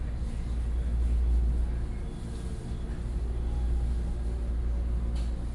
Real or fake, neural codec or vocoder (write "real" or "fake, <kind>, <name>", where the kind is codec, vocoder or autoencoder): real